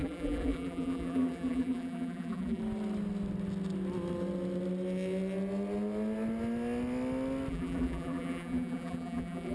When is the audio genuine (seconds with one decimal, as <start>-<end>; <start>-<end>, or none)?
2.6-7.5